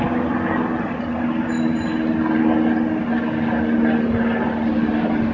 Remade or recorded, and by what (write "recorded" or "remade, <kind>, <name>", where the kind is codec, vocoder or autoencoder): recorded